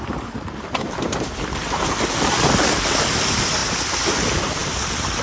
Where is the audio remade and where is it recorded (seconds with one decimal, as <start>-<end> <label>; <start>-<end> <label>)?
0.0-5.2 recorded